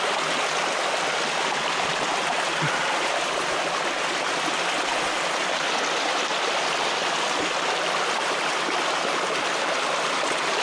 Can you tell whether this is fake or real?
real